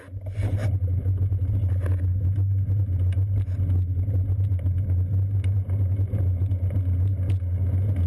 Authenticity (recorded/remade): recorded